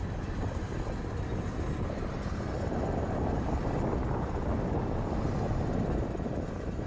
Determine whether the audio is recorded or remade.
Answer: recorded